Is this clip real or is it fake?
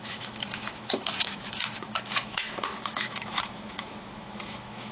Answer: fake